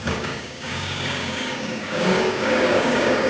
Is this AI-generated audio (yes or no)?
yes